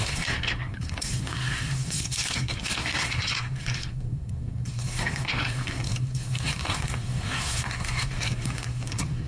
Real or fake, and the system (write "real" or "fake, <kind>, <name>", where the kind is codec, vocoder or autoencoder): fake, codec, SNAC